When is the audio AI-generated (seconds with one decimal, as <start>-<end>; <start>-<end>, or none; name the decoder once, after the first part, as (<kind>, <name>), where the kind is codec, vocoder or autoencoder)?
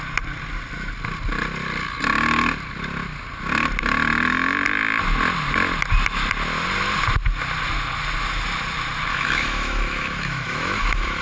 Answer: 9.1-11.2 (autoencoder, DAC-VAE)